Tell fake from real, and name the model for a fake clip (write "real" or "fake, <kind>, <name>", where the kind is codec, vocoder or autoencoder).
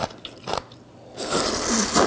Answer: real